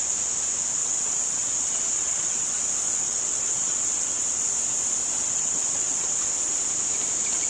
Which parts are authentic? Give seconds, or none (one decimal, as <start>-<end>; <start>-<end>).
0.0-0.8; 2.5-3.0; 4.2-5.2; 6.7-7.5